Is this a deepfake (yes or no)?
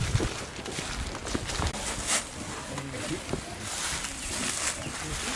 no